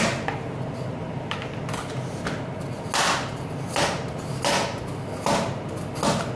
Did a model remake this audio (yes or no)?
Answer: no